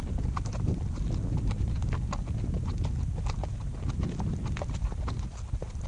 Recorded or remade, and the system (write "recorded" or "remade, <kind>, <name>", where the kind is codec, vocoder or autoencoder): recorded